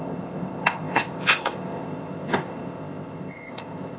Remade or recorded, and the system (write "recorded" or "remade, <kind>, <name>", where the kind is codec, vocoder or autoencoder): remade, codec, ZipCodec